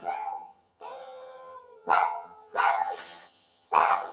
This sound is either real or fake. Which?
fake